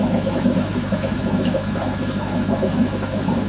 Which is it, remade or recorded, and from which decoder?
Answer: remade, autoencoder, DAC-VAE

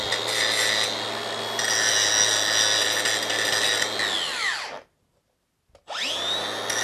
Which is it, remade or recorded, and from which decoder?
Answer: recorded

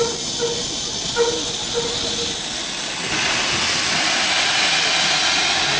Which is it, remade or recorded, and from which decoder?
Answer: recorded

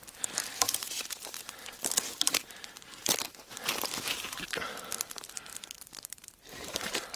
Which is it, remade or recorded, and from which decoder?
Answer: remade, vocoder, BigVGAN v2